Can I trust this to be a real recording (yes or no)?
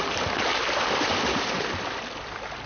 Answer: yes